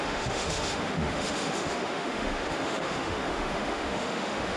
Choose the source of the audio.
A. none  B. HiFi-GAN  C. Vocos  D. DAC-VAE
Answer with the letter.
D